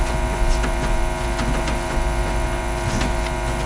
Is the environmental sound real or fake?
fake